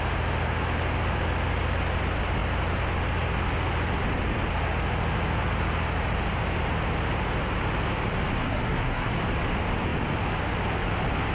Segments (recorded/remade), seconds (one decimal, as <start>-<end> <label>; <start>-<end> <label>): 0.0-8.4 recorded; 8.4-9.1 remade; 9.1-11.3 recorded